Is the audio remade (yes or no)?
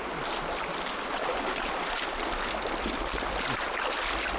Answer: no